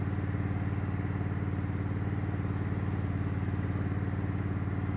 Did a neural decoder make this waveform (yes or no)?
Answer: no